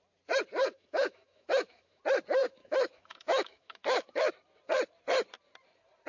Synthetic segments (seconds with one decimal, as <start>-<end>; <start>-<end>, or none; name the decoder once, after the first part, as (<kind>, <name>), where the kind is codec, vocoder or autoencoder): 0.6-2.0 (autoencoder, DAC-VAE); 2.4-4.3